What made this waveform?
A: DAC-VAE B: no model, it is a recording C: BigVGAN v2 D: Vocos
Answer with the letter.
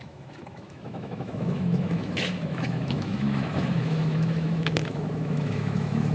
A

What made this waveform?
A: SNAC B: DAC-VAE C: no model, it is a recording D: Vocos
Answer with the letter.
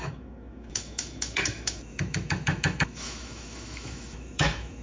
B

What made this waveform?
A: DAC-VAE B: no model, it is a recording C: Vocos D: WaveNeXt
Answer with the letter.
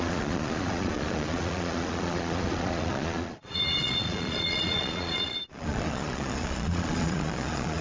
C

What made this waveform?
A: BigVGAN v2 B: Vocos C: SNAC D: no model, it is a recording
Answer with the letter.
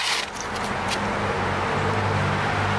D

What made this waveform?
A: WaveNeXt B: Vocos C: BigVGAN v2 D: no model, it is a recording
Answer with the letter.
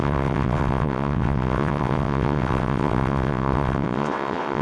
A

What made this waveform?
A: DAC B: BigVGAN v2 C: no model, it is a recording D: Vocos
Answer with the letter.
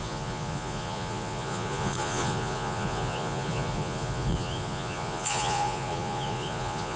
D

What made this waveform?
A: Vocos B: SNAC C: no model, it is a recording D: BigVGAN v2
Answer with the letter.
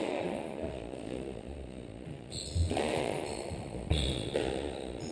A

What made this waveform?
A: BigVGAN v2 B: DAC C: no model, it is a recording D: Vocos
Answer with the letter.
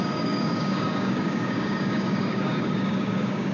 B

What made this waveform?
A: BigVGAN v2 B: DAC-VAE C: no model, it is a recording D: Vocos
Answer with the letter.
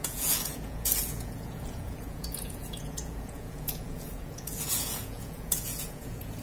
D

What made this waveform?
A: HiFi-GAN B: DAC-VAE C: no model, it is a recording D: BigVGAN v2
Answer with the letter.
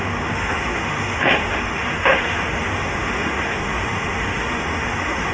B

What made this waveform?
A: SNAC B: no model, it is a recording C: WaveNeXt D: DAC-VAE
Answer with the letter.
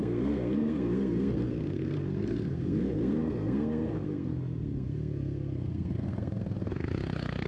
A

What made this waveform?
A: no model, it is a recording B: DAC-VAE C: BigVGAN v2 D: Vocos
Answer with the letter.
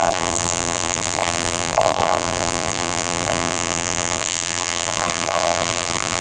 C